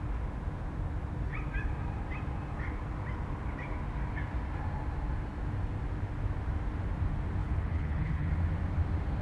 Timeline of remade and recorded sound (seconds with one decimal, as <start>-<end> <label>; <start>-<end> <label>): 0.0-7.4 recorded; 7.4-8.3 remade; 8.3-9.2 recorded